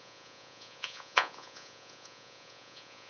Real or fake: fake